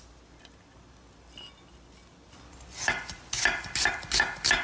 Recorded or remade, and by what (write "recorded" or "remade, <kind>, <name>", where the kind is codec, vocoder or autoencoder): recorded